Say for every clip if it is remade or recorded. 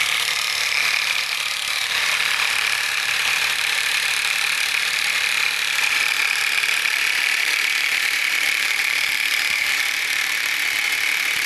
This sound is remade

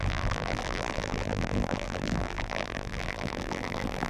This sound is remade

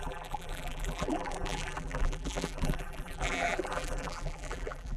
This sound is remade